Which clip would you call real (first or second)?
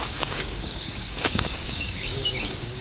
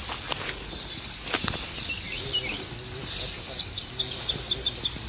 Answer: second